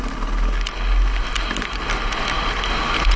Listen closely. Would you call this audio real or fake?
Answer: real